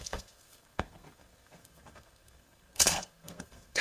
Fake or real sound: fake